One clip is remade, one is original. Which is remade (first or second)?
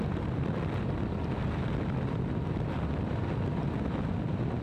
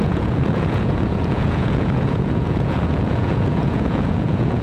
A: second